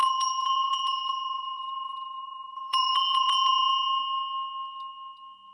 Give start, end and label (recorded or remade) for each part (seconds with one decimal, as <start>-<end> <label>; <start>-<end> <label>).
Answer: 0.0-3.3 remade; 3.3-5.5 recorded